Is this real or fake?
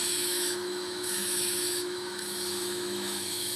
fake